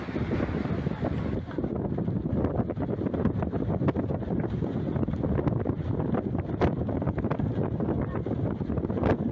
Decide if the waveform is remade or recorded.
recorded